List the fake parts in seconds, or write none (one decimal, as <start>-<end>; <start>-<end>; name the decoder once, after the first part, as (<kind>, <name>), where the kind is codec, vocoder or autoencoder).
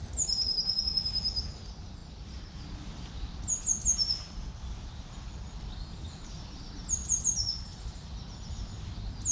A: none